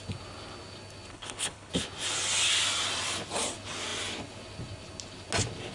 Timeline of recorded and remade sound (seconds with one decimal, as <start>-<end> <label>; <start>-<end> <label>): 0.0-1.1 recorded; 1.1-1.7 remade; 1.7-5.7 recorded